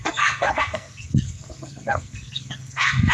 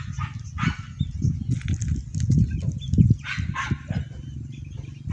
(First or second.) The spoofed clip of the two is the first